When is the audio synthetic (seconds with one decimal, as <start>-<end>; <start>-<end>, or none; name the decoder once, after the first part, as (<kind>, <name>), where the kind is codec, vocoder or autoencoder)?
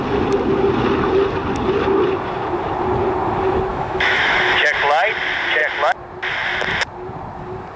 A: 3.7-4.5 (autoencoder, DAC-VAE)